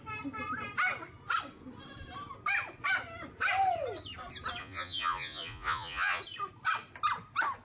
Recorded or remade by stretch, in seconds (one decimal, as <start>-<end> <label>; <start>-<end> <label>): 0.0-4.6 recorded; 4.6-6.2 remade; 6.2-7.6 recorded